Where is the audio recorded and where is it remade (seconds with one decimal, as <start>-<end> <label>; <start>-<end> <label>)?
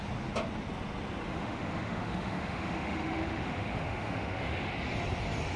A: 0.0-1.3 recorded; 1.3-4.7 remade; 4.7-5.6 recorded